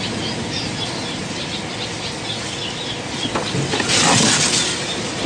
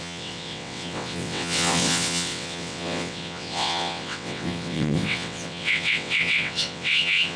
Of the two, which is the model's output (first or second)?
second